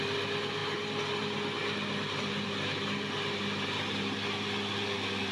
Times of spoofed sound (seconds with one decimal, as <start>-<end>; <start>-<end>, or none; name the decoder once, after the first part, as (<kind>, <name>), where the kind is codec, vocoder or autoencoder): none